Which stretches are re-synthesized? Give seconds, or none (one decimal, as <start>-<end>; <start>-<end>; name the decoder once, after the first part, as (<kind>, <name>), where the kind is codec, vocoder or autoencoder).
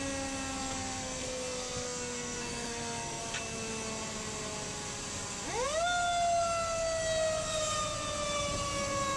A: 0.6-3.2 (codec, SNAC)